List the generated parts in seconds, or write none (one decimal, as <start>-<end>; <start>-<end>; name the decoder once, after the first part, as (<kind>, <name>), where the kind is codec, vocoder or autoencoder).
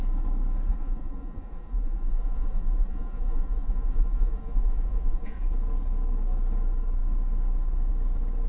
0.7-5.4 (vocoder, Vocos)